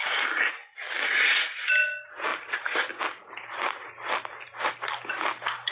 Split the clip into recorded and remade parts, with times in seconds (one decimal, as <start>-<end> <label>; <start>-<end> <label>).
0.0-5.7 recorded